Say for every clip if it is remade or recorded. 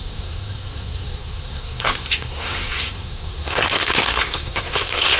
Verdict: remade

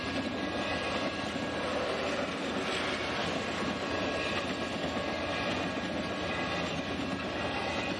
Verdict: recorded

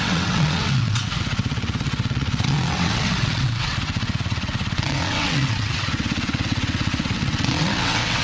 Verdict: remade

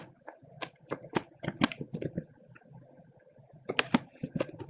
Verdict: recorded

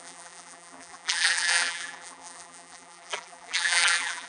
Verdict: remade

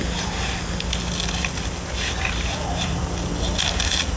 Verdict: recorded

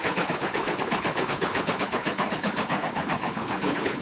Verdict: remade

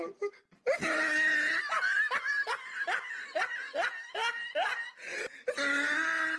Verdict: recorded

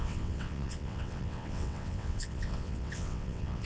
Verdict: remade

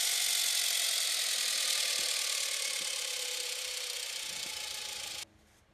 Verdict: recorded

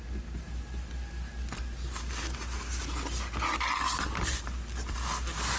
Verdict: recorded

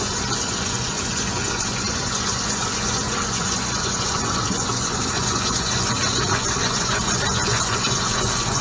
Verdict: remade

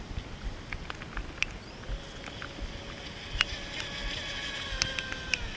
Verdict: recorded